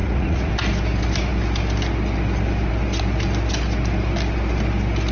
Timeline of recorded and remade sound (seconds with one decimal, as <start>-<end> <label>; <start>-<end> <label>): 0.0-0.5 remade; 0.5-5.1 recorded